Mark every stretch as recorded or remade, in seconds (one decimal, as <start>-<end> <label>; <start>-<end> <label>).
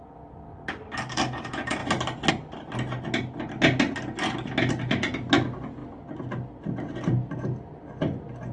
0.0-8.5 recorded